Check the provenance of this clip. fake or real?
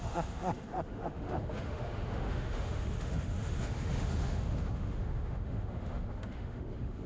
fake